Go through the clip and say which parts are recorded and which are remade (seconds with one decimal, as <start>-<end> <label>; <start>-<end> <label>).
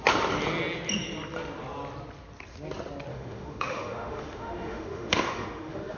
0.0-3.1 recorded; 3.1-6.0 remade